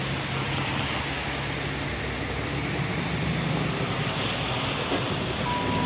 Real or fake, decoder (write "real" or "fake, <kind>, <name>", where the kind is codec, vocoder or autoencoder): real